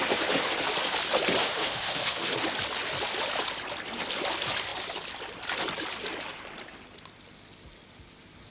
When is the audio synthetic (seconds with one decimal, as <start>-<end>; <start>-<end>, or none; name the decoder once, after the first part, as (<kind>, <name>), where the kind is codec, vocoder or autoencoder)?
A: 1.4-2.3 (autoencoder, DAC-VAE)